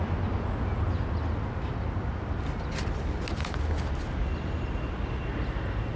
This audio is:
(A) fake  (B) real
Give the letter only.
B